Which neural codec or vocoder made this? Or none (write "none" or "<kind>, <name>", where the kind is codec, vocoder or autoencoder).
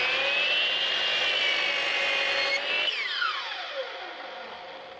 none